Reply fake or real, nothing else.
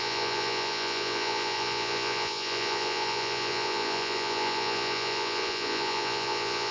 fake